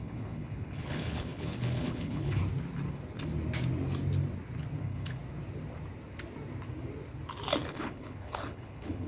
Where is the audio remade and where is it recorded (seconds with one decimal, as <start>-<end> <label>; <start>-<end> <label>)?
0.0-2.4 remade; 2.4-4.8 recorded; 4.8-5.2 remade; 5.2-7.7 recorded; 7.7-9.1 remade